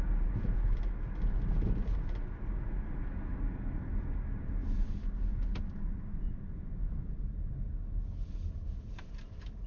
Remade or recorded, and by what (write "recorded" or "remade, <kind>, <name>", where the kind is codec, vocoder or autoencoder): recorded